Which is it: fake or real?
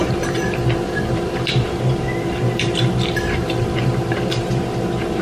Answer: fake